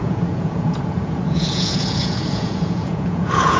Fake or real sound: fake